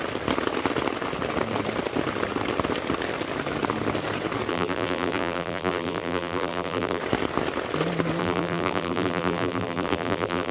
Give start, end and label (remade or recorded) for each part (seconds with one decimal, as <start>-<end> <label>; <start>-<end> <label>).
0.0-4.5 recorded; 4.5-7.0 remade; 7.0-8.2 recorded; 8.2-10.5 remade